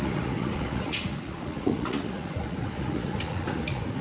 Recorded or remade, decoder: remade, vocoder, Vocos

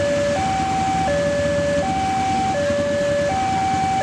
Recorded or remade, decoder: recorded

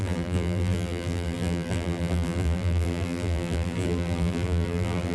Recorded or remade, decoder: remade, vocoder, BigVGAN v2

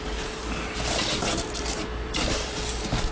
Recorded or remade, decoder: remade, vocoder, BigVGAN v2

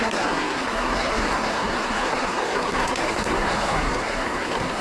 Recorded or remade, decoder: remade, codec, SNAC